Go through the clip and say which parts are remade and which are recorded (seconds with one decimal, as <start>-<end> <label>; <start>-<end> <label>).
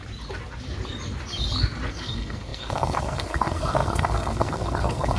0.0-1.9 recorded; 1.9-5.2 remade